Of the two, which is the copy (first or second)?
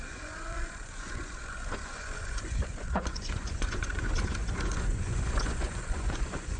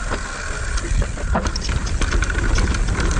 first